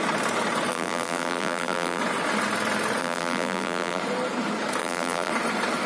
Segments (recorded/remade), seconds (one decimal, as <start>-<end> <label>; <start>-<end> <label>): 0.0-0.7 recorded; 0.7-2.0 remade; 2.0-3.0 recorded; 3.0-4.0 remade; 4.0-4.8 recorded; 4.8-5.3 remade; 5.3-5.9 recorded